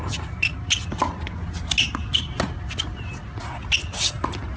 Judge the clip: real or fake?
real